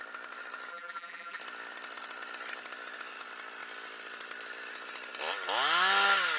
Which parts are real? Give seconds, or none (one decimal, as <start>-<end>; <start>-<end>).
0.0-0.7; 1.4-6.4